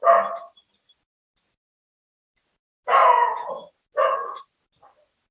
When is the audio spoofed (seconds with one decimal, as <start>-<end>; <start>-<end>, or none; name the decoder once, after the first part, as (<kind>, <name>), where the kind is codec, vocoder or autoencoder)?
3.0-3.5 (vocoder, Vocos)